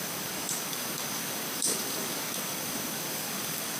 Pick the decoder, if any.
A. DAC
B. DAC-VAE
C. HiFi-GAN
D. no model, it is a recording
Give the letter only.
A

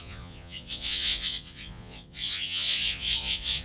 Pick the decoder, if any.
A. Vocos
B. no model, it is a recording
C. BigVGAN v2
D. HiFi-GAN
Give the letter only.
A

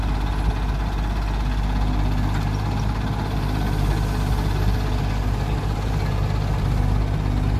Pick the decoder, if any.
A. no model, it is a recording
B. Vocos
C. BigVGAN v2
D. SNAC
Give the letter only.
A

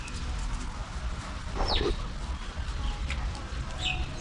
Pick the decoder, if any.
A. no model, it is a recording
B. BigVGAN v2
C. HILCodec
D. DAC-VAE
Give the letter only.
A